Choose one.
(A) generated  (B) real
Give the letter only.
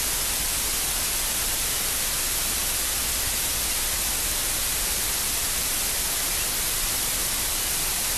A